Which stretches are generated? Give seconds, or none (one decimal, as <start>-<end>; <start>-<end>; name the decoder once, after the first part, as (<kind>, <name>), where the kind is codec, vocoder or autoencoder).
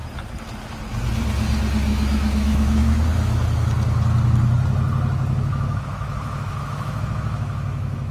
1.9-3.4 (autoencoder, DAC-VAE); 5.5-8.1